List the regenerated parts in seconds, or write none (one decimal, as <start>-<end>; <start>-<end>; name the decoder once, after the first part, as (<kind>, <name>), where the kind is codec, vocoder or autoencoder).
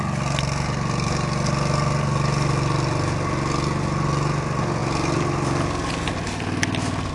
none